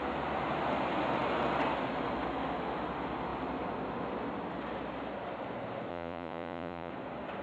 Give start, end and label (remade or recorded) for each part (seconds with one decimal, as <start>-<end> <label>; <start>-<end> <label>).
0.0-5.9 recorded; 5.9-6.9 remade; 6.9-7.4 recorded